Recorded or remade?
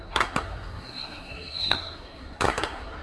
remade